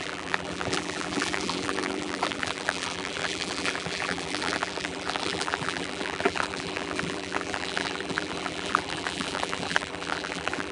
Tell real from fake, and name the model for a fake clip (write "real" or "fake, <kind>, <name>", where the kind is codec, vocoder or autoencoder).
fake, vocoder, BigVGAN v2